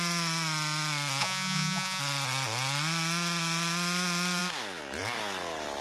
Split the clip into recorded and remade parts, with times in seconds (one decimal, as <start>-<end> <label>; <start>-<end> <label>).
0.0-1.2 recorded; 1.2-2.0 remade; 2.0-5.8 recorded